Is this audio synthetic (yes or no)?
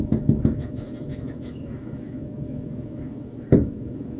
yes